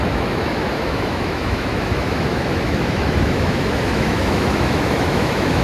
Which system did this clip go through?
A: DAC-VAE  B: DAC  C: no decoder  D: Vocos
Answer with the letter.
A